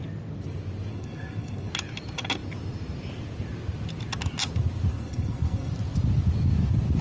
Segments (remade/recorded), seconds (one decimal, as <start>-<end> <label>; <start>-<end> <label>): 0.0-0.9 recorded; 0.9-1.7 remade; 1.7-4.9 recorded; 4.9-5.7 remade; 5.7-7.0 recorded